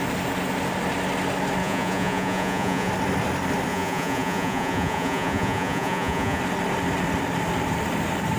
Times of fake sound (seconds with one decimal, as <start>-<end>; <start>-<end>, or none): 1.6-2.9; 3.7-6.4

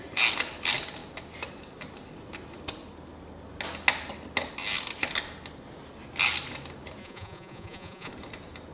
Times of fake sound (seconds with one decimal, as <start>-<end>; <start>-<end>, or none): 7.0-8.1

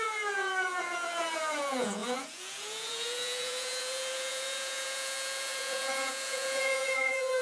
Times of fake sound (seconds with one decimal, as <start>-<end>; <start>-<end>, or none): 0.0-7.4

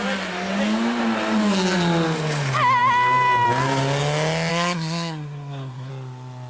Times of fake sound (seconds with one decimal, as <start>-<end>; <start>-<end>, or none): 4.5-5.9

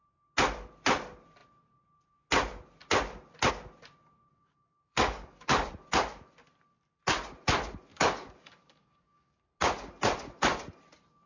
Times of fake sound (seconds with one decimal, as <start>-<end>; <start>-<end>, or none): 4.3-5.7; 7.9-9.4

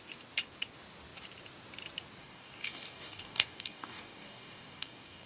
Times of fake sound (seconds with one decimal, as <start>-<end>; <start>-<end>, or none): 2.2-5.3

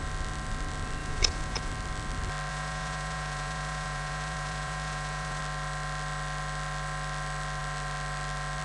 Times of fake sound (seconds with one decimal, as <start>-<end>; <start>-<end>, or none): 1.0-1.7; 2.5-5.4

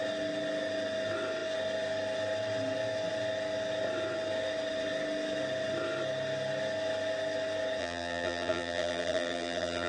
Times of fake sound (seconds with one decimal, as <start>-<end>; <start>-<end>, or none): 7.8-9.9